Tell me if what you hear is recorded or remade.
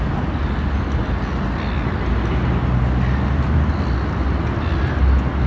recorded